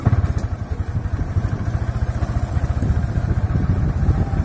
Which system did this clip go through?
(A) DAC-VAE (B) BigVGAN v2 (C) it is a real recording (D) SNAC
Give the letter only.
C